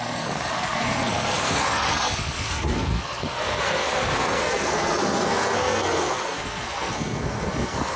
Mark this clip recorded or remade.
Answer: remade